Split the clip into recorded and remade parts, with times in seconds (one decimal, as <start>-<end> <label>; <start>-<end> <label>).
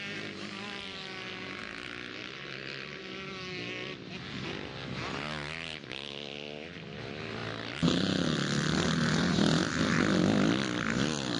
0.0-11.4 recorded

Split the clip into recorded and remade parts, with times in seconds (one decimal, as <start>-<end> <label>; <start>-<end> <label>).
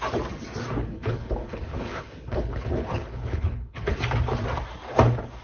0.0-0.8 recorded; 0.8-4.0 remade; 4.0-5.4 recorded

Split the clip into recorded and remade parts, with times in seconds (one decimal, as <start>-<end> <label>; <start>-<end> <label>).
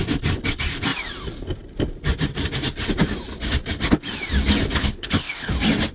0.0-4.8 recorded; 4.8-5.5 remade; 5.5-5.9 recorded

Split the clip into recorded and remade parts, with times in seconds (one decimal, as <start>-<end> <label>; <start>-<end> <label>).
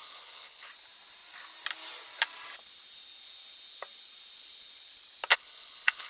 0.0-0.7 remade; 0.7-5.3 recorded; 5.3-6.1 remade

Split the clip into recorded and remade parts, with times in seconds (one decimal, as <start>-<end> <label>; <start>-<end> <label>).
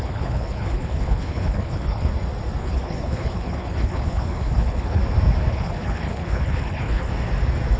0.0-2.1 remade; 2.1-2.6 recorded; 2.6-5.0 remade; 5.0-5.5 recorded; 5.5-7.1 remade; 7.1-7.8 recorded